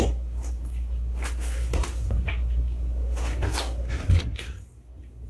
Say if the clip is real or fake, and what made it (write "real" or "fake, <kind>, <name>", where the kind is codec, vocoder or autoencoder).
fake, codec, SNAC